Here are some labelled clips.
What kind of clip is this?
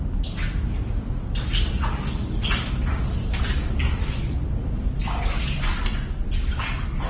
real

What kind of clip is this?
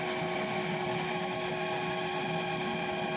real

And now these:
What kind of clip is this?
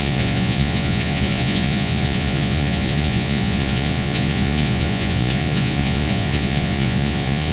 fake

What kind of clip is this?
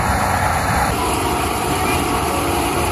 fake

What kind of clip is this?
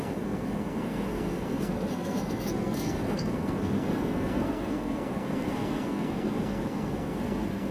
fake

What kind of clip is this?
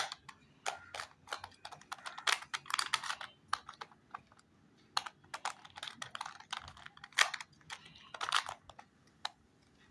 real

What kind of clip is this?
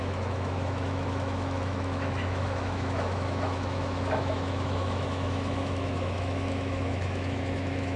fake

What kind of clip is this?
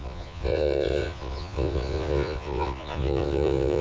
fake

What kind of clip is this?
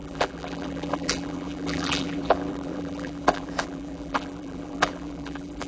fake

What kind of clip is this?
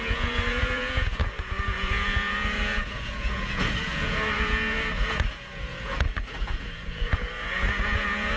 fake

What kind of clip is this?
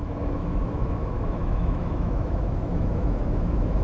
fake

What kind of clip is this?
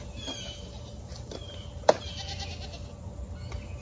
real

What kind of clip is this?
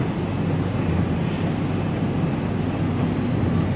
real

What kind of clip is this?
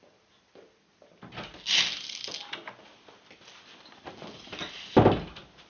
real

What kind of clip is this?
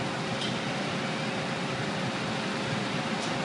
real